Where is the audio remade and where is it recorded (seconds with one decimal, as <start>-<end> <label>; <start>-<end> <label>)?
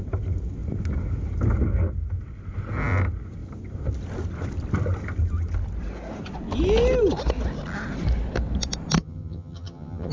0.0-9.0 recorded; 9.0-10.1 remade